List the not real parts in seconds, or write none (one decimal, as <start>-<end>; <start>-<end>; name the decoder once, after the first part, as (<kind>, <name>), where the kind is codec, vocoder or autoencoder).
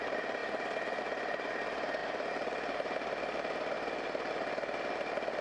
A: none